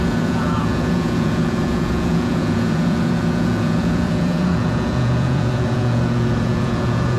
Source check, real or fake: fake